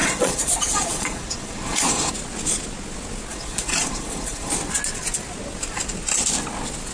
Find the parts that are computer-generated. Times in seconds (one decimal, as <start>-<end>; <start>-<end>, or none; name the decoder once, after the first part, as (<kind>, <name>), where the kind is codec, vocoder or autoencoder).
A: 0.0-2.1 (vocoder, Vocos); 3.3-4.5